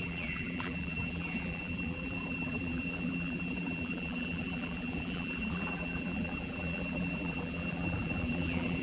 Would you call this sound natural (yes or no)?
no